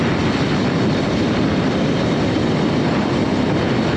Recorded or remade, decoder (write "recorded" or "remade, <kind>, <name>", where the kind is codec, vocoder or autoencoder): recorded